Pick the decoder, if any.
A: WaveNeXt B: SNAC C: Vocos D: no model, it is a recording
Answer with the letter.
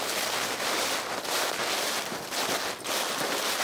D